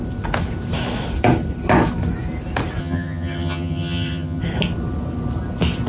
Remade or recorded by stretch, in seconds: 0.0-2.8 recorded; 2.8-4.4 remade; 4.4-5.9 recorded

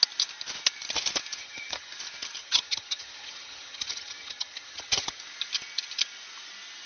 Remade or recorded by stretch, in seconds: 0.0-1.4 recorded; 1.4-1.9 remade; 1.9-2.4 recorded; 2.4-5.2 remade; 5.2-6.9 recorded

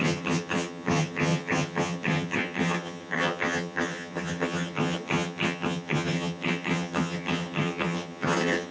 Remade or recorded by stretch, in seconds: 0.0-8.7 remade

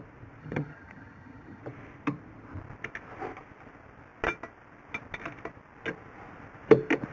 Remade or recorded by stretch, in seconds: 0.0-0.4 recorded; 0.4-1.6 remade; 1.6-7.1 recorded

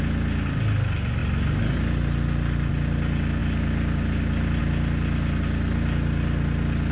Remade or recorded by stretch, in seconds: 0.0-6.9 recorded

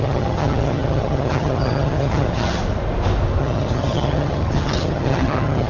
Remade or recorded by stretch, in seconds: 0.0-2.6 remade; 2.6-3.4 recorded; 3.4-5.7 remade